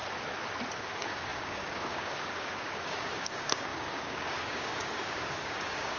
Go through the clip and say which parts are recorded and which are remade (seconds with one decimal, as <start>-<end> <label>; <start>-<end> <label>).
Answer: 0.0-0.8 recorded; 0.8-6.0 remade

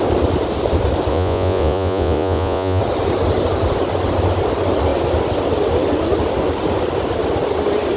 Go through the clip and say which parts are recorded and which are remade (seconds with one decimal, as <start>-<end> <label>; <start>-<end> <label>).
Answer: 0.0-1.1 recorded; 1.1-2.8 remade; 2.8-8.0 recorded

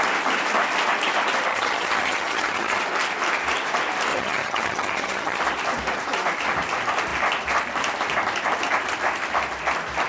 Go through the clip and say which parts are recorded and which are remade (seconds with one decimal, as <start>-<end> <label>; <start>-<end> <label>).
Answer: 0.0-1.5 recorded; 1.5-2.8 remade; 2.8-4.1 recorded; 4.1-5.4 remade; 5.4-10.1 recorded

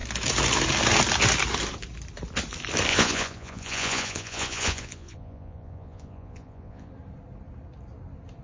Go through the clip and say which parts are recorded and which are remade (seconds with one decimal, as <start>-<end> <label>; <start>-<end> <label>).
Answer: 0.0-2.9 recorded; 2.9-6.9 remade; 6.9-8.4 recorded